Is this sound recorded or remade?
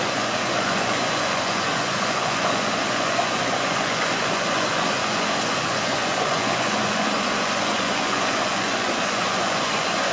remade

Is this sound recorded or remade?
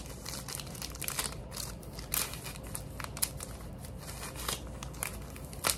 recorded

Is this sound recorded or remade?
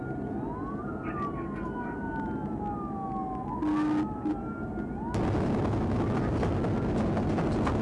recorded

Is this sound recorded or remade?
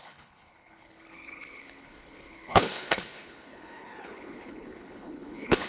remade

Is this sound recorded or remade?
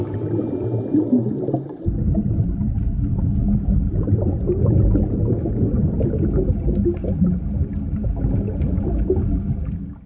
recorded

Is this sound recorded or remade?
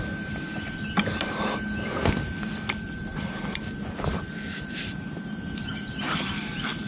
recorded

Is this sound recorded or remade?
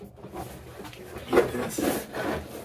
recorded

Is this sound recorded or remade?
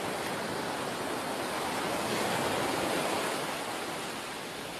recorded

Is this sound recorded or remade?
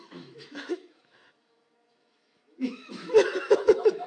remade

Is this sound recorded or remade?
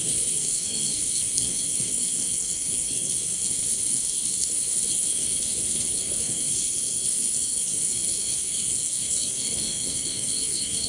remade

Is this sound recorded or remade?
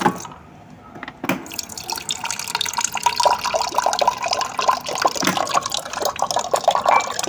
recorded